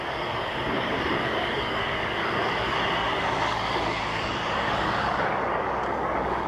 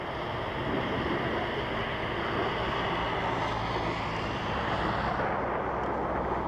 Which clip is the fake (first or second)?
first